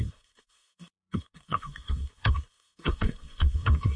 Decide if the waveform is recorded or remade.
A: remade